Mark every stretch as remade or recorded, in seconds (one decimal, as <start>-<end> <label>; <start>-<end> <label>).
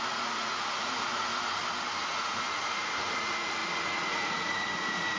0.0-1.3 remade; 1.3-2.0 recorded; 2.0-5.2 remade